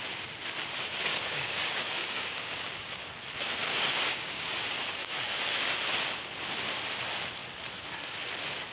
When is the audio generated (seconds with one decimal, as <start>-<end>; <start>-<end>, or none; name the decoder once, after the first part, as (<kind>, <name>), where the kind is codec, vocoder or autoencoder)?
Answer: 1.1-3.1 (codec, DAC); 3.6-4.4; 5.0-5.7